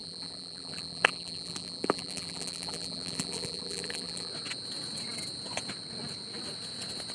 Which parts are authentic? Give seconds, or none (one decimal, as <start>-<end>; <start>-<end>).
4.3-7.1